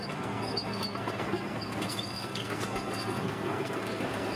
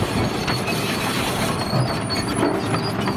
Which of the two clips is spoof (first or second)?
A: first